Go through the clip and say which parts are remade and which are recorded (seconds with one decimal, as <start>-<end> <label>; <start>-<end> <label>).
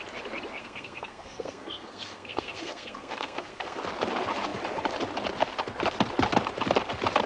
0.0-0.6 recorded; 0.6-3.8 remade; 3.8-7.3 recorded